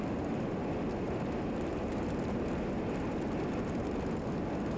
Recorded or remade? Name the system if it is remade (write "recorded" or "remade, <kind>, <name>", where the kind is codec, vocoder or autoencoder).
recorded